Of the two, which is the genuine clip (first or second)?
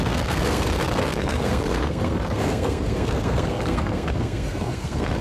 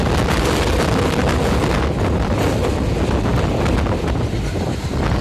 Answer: second